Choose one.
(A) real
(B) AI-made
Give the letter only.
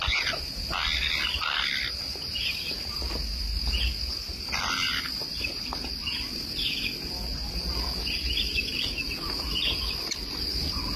A